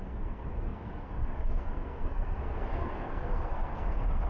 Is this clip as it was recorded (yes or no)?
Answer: no